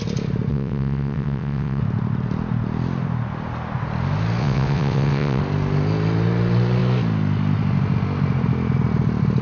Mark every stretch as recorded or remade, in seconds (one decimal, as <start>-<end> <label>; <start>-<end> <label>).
0.0-0.5 recorded; 0.5-1.8 remade; 1.8-4.4 recorded; 4.4-5.4 remade; 5.4-9.4 recorded